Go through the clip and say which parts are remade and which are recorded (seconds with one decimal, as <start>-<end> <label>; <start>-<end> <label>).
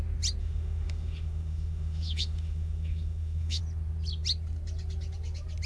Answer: 0.0-0.4 recorded; 0.4-3.6 remade; 3.6-5.7 recorded